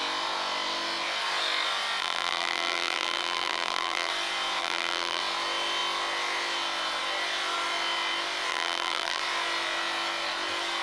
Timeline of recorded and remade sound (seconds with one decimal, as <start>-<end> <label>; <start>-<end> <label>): 0.0-2.0 recorded; 2.0-4.1 remade; 4.1-4.6 recorded; 4.6-5.2 remade; 5.2-8.5 recorded; 8.5-9.2 remade; 9.2-10.8 recorded